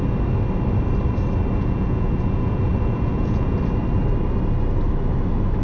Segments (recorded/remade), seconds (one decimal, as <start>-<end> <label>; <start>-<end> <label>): 0.0-1.6 recorded; 1.6-3.6 remade; 3.6-5.6 recorded